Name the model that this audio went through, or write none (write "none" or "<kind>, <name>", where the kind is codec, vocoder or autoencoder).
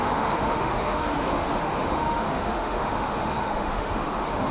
autoencoder, DAC-VAE